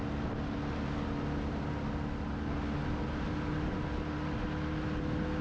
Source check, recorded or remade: recorded